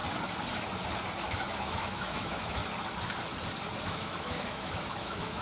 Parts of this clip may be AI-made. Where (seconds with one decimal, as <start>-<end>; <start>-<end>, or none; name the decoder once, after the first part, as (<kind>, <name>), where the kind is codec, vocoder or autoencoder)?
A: 1.6-2.6 (autoencoder, DAC-VAE); 3.8-5.4